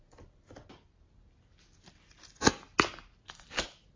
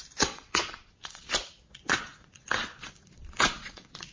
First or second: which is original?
first